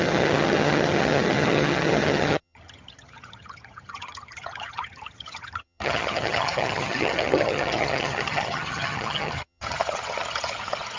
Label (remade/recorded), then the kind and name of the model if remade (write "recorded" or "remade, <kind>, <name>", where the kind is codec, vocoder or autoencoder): remade, vocoder, HiFi-GAN